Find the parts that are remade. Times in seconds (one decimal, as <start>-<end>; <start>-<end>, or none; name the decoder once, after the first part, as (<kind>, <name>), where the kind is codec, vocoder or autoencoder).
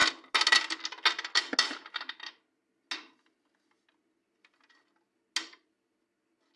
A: none